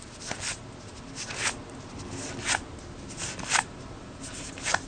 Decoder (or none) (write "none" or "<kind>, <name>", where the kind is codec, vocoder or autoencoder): none